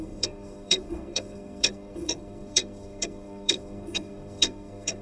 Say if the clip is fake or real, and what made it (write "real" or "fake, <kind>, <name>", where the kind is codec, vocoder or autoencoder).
fake, codec, SNAC